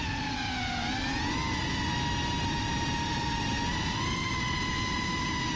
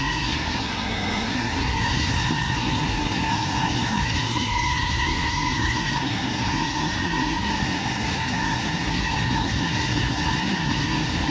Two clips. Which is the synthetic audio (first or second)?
second